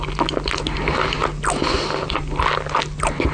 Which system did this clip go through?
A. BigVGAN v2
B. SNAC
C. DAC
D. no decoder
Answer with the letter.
D